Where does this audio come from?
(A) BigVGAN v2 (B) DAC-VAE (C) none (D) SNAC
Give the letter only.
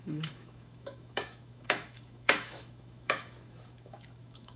B